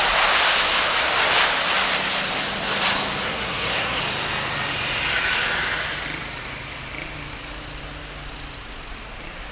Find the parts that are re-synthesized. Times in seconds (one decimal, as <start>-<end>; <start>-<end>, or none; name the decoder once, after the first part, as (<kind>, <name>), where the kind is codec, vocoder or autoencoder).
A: 3.2-4.0 (codec, SNAC)

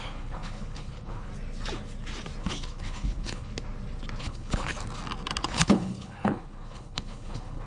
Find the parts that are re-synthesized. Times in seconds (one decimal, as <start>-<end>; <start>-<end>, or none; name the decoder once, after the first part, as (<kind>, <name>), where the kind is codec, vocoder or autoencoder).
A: 0.0-1.3 (codec, HILCodec); 2.4-3.5; 4.2-4.7; 5.4-7.7

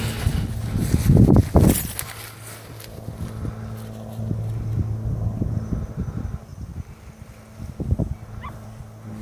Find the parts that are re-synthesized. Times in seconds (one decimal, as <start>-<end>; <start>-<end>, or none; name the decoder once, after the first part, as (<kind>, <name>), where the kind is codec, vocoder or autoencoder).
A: none